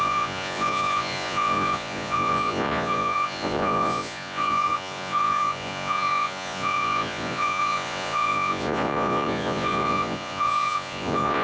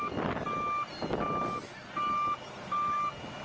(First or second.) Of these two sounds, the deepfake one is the first